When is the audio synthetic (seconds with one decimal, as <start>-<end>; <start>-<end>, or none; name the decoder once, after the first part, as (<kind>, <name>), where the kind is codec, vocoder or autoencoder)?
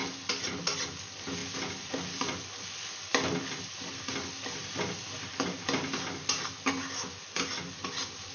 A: none